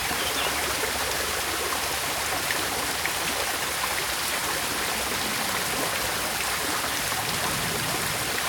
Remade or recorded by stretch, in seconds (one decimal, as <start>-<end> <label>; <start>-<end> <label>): 0.0-1.6 remade; 1.6-8.5 recorded